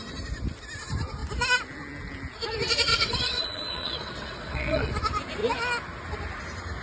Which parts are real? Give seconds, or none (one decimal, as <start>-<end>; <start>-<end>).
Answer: 0.0-2.9; 4.9-6.8